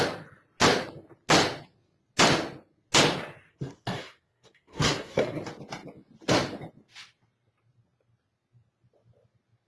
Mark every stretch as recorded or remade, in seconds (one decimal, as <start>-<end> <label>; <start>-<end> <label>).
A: 0.0-3.5 recorded; 3.5-5.4 remade; 5.4-9.7 recorded